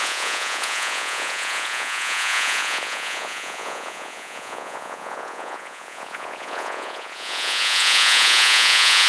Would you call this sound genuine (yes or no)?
no